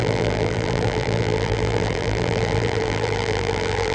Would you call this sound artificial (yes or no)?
yes